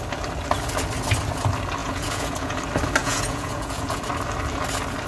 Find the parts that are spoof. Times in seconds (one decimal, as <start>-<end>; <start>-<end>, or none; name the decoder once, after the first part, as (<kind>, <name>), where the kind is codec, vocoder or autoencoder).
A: 1.8-2.6 (vocoder, Vocos); 3.0-4.0